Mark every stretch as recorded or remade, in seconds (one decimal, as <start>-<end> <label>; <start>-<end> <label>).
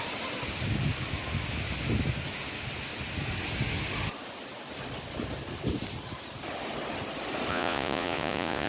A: 0.0-7.5 recorded; 7.5-8.7 remade